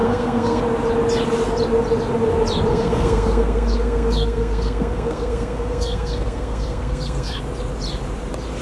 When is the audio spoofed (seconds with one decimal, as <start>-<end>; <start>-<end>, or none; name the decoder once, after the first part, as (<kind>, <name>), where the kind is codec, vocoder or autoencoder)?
0.0-0.6 (codec, SNAC); 2.7-7.4

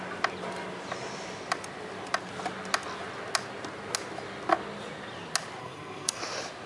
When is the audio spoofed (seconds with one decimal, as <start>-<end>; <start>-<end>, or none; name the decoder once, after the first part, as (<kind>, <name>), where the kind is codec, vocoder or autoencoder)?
5.6-6.2 (codec, SNAC)

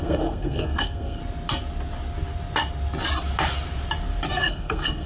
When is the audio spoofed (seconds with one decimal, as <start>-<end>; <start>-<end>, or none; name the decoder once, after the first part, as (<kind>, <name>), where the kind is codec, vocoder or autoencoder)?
0.0-1.2 (codec, SNAC); 4.3-5.1

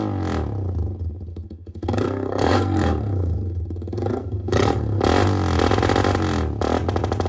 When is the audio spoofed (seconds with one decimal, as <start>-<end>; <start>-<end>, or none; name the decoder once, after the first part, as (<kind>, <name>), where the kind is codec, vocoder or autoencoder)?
1.3-5.0 (codec, SNAC)